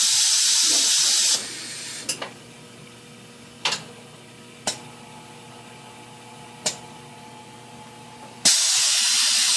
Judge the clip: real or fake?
real